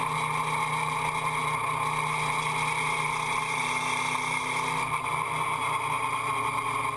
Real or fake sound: real